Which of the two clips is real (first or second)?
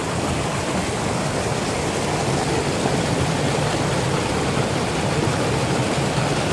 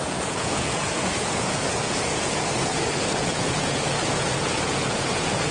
first